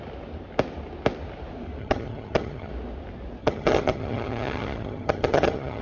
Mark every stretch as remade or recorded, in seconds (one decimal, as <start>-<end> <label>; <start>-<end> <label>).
0.0-1.8 recorded; 1.8-2.7 remade; 2.7-3.4 recorded; 3.4-5.8 remade